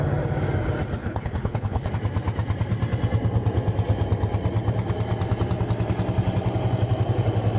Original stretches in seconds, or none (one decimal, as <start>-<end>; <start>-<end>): 0.0-1.0; 1.9-7.6